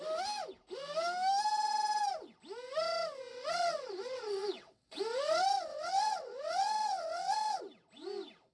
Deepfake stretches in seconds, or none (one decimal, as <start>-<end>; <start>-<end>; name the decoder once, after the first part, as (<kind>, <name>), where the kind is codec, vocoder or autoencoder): 3.3-5.0 (vocoder, WaveNeXt); 5.7-7.6